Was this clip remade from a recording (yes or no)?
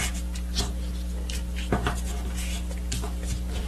no